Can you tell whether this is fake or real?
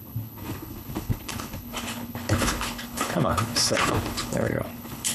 fake